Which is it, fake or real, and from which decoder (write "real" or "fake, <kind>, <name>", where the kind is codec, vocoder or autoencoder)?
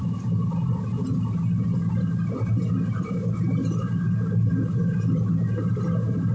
real